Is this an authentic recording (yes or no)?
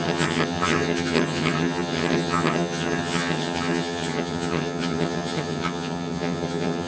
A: no